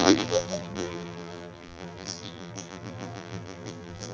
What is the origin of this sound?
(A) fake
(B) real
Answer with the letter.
A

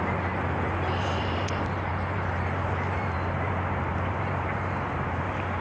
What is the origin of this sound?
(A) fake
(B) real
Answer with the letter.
A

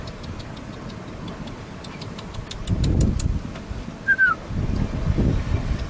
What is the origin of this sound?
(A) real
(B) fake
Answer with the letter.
A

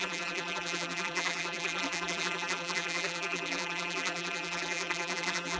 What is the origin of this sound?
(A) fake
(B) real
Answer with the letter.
A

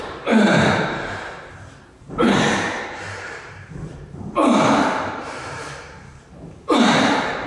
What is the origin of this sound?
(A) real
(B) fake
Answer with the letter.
B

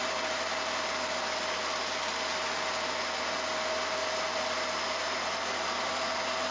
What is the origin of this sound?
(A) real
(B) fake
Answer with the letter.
A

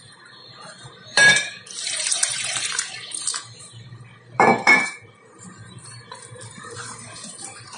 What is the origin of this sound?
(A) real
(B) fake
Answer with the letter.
B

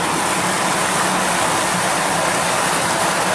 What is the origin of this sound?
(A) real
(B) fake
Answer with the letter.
A